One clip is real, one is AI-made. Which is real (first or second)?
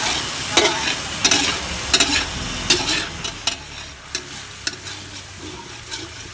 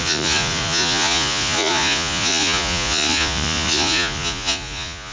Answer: first